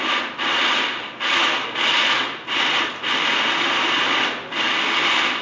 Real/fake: real